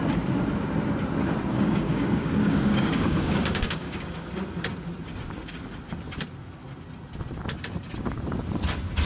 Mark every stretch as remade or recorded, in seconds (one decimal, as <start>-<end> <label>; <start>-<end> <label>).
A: 0.0-1.5 recorded; 1.5-4.3 remade; 4.3-9.1 recorded